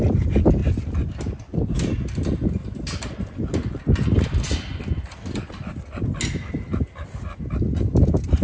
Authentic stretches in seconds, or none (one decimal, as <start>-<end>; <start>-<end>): 0.0-8.4